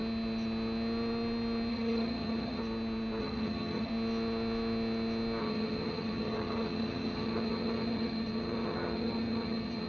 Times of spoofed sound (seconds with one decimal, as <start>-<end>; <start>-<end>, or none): 1.7-2.6; 3.2-3.9; 5.4-9.9